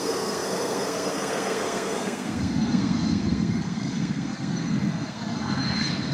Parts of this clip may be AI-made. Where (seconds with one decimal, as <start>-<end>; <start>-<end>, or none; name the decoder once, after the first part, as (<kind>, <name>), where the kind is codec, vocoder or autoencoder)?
0.0-6.1 (codec, SNAC)